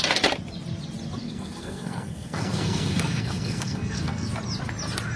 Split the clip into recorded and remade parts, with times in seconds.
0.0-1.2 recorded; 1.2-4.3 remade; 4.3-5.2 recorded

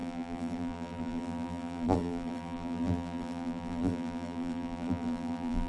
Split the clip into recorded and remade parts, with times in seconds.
0.0-5.7 remade

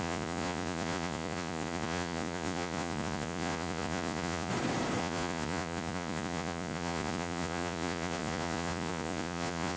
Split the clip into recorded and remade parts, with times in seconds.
0.0-4.5 remade; 4.5-5.0 recorded; 5.0-9.8 remade

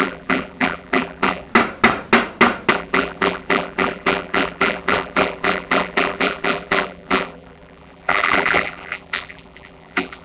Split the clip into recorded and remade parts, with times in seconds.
0.0-1.5 remade; 1.5-2.7 recorded; 2.7-10.2 remade

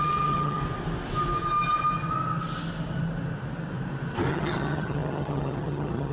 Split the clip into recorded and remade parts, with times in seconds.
0.0-0.6 remade; 0.6-4.3 recorded; 4.3-6.1 remade

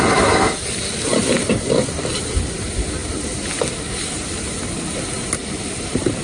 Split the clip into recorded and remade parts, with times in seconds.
0.0-6.2 remade